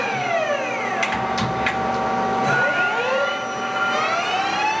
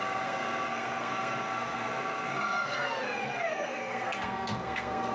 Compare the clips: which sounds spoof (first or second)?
second